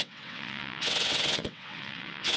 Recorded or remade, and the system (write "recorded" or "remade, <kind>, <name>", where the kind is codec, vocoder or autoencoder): remade, vocoder, WaveNeXt